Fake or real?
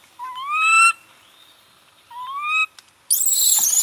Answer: real